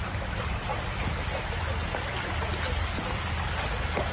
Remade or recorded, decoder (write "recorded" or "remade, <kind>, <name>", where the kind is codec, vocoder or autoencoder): recorded